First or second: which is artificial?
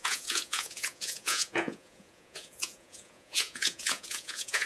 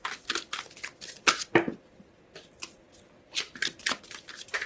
first